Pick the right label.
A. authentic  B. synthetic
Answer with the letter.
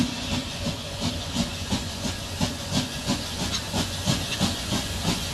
B